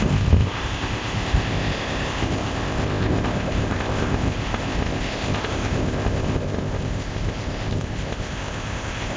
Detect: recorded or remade remade